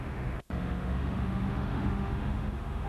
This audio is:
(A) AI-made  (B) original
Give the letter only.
A